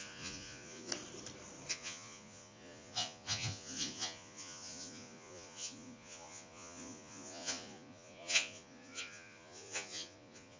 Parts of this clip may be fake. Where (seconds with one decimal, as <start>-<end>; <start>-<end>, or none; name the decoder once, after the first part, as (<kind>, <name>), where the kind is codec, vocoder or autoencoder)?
0.0-0.9 (vocoder, Vocos); 1.7-10.6